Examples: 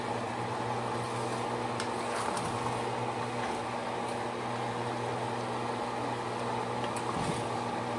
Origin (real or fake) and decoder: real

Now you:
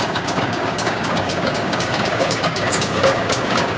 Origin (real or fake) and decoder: fake, codec, DAC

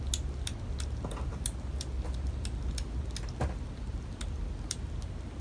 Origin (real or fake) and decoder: real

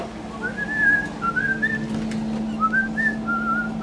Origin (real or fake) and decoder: real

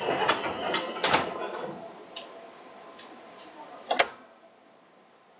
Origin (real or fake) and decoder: real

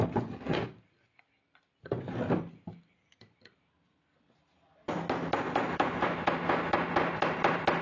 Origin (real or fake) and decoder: real